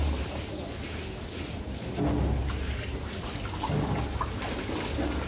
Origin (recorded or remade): recorded